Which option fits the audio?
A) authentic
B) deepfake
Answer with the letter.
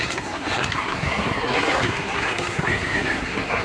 B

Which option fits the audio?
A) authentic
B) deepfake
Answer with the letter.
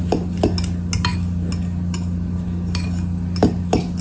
A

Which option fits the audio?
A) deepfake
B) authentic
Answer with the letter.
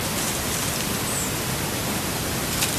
A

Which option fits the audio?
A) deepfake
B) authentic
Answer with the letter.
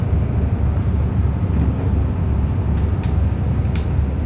B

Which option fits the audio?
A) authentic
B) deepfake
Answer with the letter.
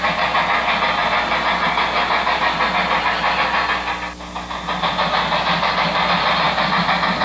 A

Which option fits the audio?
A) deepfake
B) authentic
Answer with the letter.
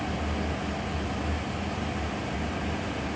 B